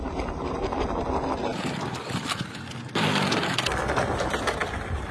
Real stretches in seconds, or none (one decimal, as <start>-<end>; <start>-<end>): 0.0-5.1